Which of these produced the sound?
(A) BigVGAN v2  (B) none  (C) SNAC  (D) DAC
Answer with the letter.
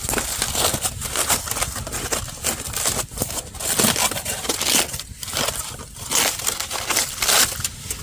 B